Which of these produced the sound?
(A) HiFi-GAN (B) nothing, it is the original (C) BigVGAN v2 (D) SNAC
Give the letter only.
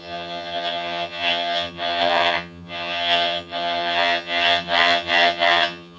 A